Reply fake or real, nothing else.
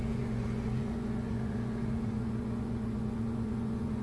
fake